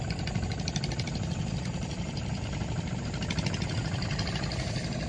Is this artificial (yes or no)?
no